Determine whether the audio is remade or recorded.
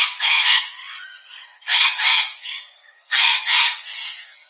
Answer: remade